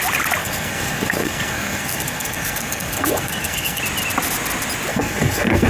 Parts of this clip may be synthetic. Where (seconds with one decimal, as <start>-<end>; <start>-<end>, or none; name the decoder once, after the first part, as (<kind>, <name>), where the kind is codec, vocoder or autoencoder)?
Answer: 0.4-3.8 (codec, SNAC); 4.9-5.7